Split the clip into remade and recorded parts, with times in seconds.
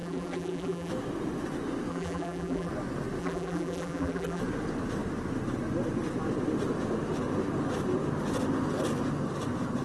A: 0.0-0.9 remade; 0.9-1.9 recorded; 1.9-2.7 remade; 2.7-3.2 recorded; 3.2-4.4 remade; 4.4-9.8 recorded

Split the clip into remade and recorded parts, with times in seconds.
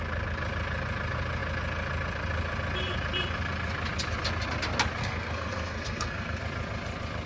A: 0.0-5.0 recorded; 5.0-6.4 remade; 6.4-7.3 recorded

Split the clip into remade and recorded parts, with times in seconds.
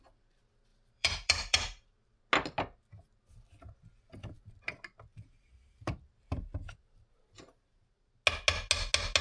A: 0.0-0.7 recorded; 0.7-2.2 remade; 2.2-5.1 recorded; 5.1-8.1 remade; 8.1-9.2 recorded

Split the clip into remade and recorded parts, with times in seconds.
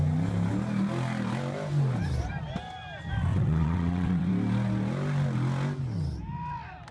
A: 0.0-3.3 recorded; 3.3-4.3 remade; 4.3-6.9 recorded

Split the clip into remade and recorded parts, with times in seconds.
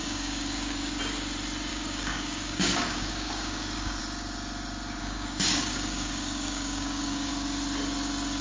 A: 0.0-1.0 remade; 1.0-1.7 recorded; 1.7-4.0 remade; 4.0-5.0 recorded; 5.0-7.3 remade; 7.3-8.4 recorded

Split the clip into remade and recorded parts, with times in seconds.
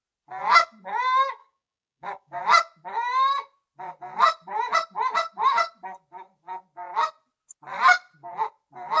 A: 0.0-1.4 recorded; 1.4-2.4 remade; 2.4-9.0 recorded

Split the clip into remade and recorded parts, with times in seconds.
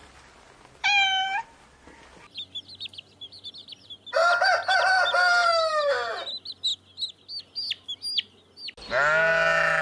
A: 0.0-9.8 recorded